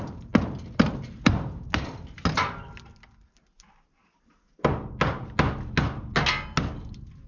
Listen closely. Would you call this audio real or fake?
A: real